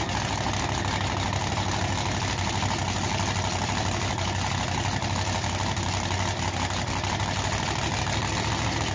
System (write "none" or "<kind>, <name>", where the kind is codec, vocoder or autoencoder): none